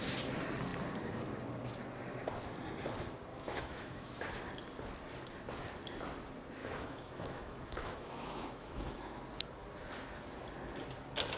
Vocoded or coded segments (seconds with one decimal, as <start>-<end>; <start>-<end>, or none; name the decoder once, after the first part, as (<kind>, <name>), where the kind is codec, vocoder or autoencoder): 3.3-4.4 (autoencoder, DAC-VAE); 6.6-9.2